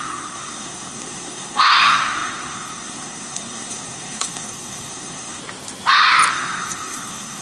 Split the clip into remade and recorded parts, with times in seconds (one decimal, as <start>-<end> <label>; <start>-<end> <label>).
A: 0.0-5.4 remade; 5.4-6.3 recorded; 6.3-7.4 remade